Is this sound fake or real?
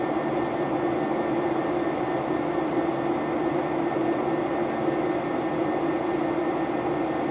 real